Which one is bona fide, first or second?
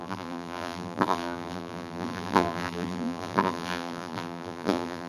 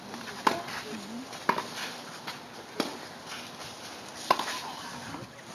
second